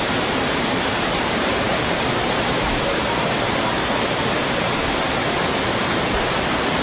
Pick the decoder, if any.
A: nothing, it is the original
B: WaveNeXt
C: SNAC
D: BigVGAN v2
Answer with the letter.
D